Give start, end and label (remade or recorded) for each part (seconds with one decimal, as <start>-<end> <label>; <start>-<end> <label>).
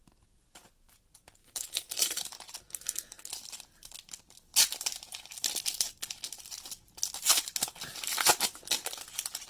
0.0-1.4 recorded; 1.4-2.2 remade; 2.2-2.6 recorded; 2.6-3.3 remade; 3.3-9.5 recorded